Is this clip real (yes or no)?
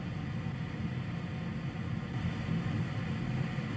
yes